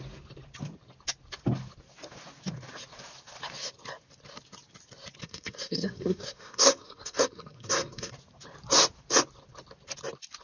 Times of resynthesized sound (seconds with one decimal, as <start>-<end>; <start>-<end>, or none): 5.2-8.1